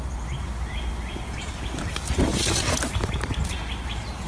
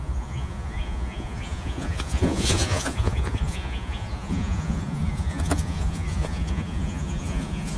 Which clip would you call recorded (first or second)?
first